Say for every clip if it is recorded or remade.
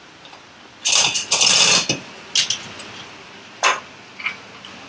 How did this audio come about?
recorded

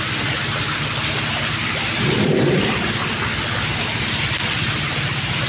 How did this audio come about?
recorded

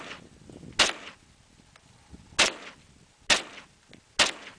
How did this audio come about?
recorded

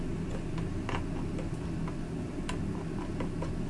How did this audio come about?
recorded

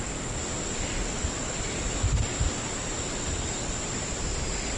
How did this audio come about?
recorded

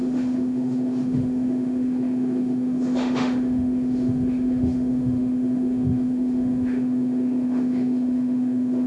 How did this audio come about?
remade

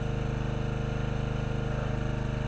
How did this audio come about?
recorded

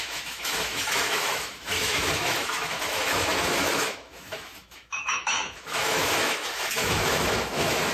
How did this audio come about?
remade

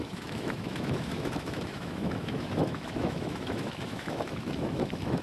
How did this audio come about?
remade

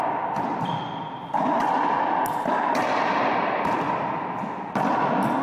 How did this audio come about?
recorded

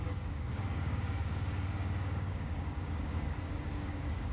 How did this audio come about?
remade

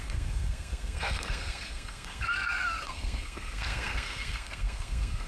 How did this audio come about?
remade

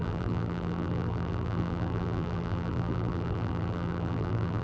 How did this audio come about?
remade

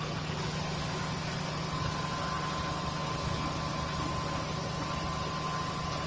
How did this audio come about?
recorded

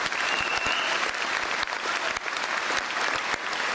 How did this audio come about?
recorded